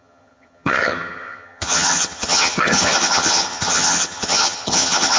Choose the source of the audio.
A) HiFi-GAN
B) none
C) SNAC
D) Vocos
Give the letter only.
A